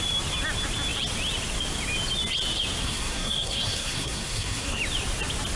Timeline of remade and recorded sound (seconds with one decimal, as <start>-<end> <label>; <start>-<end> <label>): 0.0-2.8 recorded; 2.8-4.8 remade; 4.8-5.6 recorded

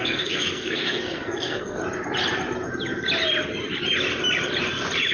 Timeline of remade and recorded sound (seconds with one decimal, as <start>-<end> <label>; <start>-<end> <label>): 0.0-1.8 remade; 1.8-5.1 recorded

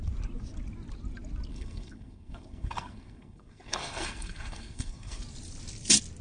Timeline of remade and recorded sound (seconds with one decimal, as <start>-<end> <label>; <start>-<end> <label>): 0.0-1.5 recorded; 1.5-5.2 remade; 5.2-6.2 recorded

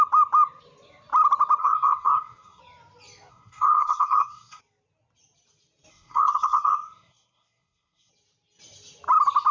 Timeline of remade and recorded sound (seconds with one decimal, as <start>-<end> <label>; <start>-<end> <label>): 0.0-1.6 recorded; 1.6-2.6 remade; 2.6-3.3 recorded; 3.3-4.6 remade; 4.6-5.9 recorded; 5.9-8.1 remade; 8.1-9.5 recorded

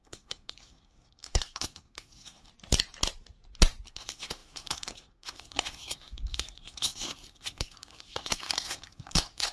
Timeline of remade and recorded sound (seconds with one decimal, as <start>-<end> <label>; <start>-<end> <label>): 0.0-2.5 remade; 2.5-3.9 recorded; 3.9-9.5 remade

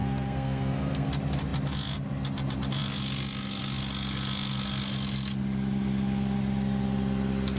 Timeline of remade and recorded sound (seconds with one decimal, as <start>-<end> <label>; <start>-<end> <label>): 0.0-1.1 remade; 1.1-7.6 recorded

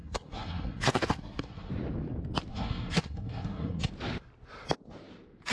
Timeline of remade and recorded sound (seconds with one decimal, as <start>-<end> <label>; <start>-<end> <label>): 0.0-1.7 remade; 1.7-2.5 recorded; 2.5-3.9 remade; 3.9-5.5 recorded

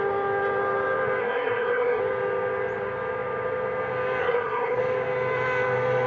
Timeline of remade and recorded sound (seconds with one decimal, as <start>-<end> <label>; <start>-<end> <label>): 0.0-1.2 recorded; 1.2-2.0 remade; 2.0-4.2 recorded; 4.2-4.8 remade; 4.8-6.1 recorded